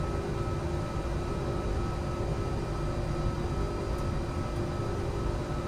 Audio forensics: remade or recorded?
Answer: recorded